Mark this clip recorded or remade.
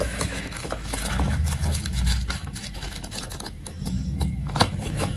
remade